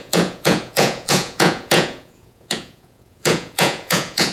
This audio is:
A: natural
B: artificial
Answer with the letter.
B